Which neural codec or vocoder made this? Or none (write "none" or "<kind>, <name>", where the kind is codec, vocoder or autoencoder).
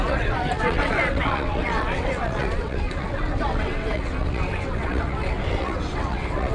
vocoder, WaveNeXt